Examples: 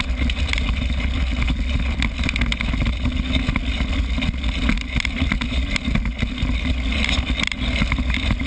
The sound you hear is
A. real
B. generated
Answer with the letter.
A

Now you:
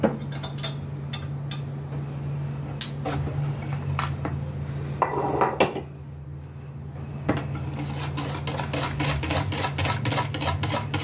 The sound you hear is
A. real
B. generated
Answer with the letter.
A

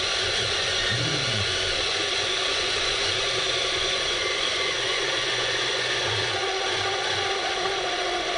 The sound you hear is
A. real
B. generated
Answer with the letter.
B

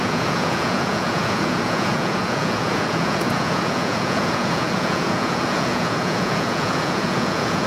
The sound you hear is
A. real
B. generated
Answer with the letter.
B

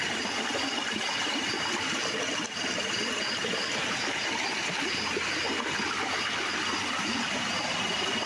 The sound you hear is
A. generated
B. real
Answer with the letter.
B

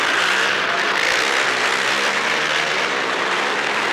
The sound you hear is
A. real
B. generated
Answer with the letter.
A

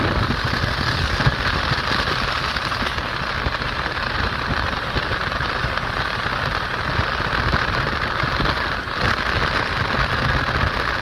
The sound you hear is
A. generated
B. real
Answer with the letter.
B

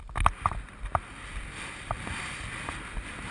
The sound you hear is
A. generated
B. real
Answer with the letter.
B